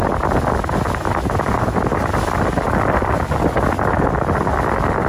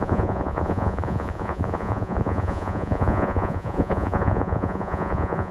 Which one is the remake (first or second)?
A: second